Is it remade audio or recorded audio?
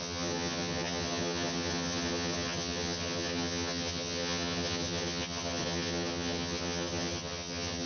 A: remade